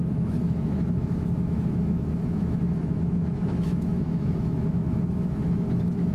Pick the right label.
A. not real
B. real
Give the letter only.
A